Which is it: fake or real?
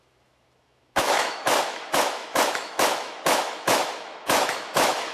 fake